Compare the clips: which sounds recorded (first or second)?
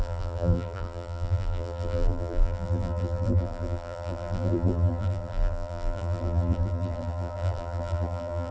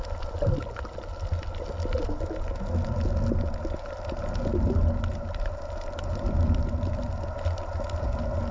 second